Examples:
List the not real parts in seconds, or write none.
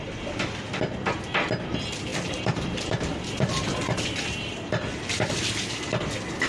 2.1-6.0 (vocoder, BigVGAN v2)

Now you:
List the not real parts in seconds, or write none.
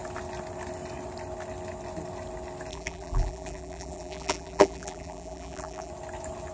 2.7-5.9 (vocoder, BigVGAN v2)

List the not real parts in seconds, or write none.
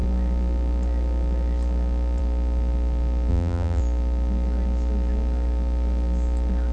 3.3-3.8 (vocoder, BigVGAN v2)